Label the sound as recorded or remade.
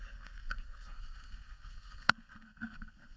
remade